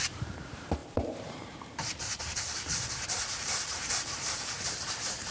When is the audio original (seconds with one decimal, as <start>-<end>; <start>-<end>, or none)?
none